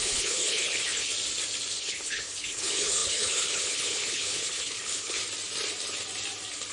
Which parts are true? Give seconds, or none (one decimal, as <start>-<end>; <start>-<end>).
1.1-1.8; 5.2-6.7